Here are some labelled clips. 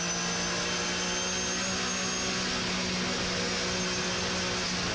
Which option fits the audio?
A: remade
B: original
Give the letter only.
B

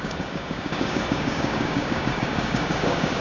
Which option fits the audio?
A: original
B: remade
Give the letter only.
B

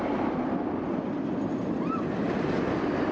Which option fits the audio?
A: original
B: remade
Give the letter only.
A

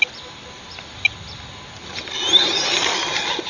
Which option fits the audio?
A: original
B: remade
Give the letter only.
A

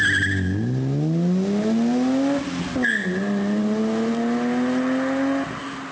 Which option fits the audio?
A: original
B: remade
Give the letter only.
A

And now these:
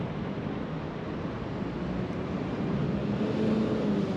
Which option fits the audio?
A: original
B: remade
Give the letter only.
A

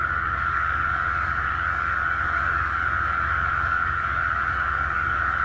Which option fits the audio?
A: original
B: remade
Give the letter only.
B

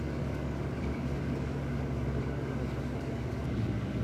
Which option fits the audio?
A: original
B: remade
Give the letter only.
B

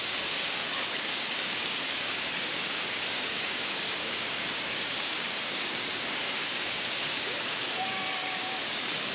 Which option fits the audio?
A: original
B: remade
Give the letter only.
B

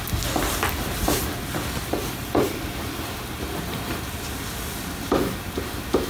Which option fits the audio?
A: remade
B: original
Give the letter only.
B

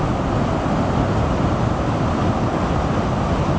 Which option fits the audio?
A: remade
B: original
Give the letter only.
B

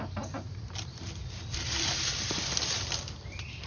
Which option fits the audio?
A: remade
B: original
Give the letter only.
B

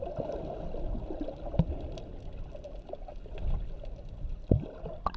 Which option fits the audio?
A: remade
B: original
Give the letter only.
B